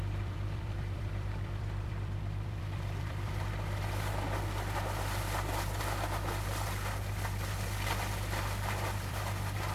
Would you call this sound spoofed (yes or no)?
yes